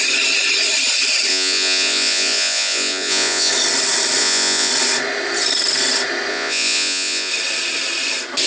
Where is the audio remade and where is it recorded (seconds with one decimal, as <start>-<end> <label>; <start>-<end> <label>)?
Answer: 0.0-1.3 recorded; 1.3-3.5 remade; 3.5-4.2 recorded; 4.2-4.7 remade; 4.7-6.3 recorded; 6.3-7.3 remade; 7.3-8.5 recorded